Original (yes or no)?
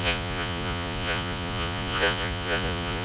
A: no